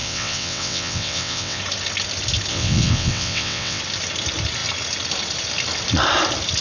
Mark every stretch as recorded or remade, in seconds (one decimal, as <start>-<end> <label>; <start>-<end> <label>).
0.0-1.6 remade; 1.6-2.5 recorded; 2.5-3.8 remade; 3.8-6.6 recorded